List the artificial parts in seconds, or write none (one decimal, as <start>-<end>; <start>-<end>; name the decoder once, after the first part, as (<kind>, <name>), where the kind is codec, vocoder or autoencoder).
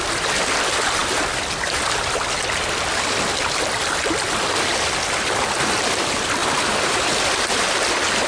0.0-8.3 (vocoder, BigVGAN v2)